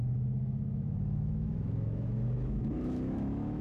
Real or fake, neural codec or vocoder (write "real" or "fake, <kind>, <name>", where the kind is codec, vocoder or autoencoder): fake, autoencoder, DAC-VAE